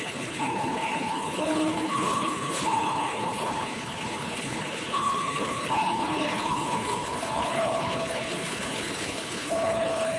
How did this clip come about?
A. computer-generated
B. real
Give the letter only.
A